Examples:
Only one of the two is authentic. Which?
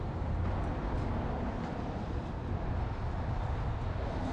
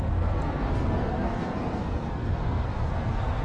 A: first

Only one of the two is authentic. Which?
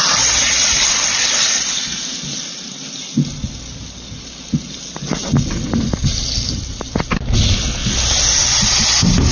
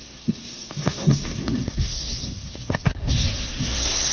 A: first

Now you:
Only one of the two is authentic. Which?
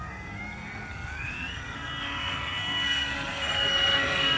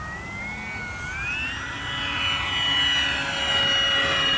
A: second